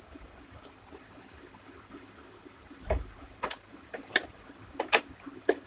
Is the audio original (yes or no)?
no